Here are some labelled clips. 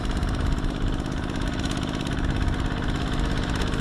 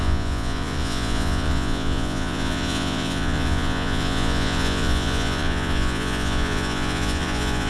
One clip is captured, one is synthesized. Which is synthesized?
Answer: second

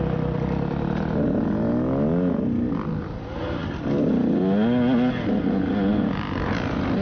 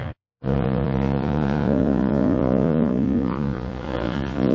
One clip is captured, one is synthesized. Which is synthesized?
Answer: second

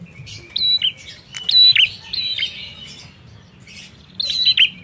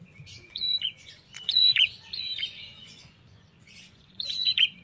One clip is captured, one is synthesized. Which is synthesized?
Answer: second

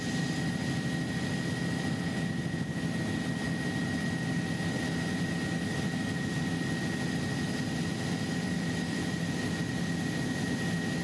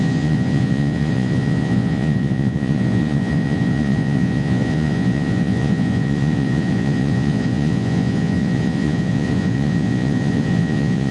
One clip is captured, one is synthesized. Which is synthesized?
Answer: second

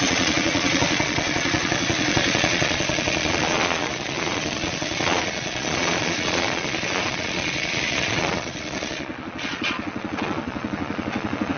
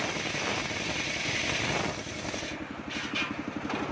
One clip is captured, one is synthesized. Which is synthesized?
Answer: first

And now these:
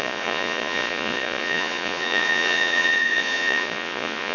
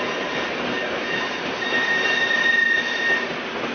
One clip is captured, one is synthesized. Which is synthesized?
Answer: first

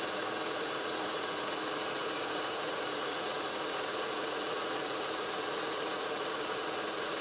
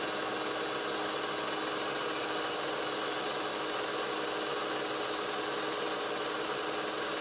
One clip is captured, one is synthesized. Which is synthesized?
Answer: first